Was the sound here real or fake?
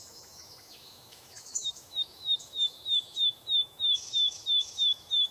fake